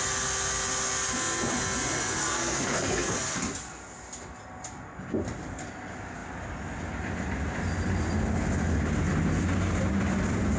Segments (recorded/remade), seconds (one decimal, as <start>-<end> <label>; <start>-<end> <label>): 0.0-2.2 recorded; 2.2-3.2 remade; 3.2-10.6 recorded